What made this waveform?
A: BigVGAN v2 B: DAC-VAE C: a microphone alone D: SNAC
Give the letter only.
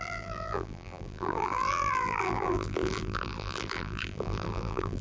A